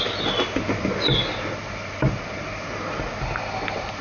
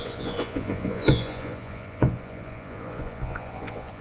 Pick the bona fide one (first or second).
first